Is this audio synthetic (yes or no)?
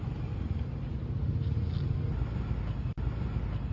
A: no